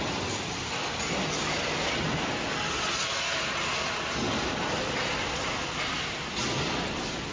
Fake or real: real